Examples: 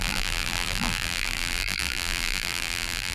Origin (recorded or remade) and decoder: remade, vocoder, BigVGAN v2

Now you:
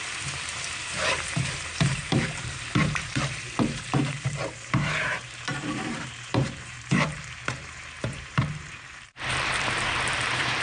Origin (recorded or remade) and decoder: remade, vocoder, BigVGAN v2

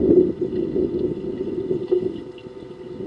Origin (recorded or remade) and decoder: recorded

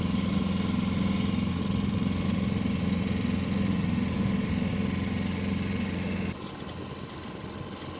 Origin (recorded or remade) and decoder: recorded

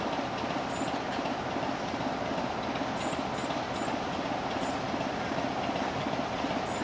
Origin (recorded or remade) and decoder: recorded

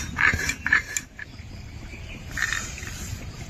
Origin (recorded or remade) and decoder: remade, vocoder, BigVGAN v2